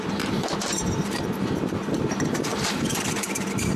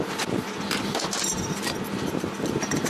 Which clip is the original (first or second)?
second